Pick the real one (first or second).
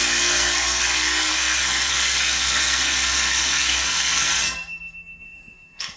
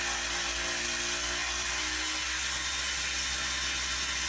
second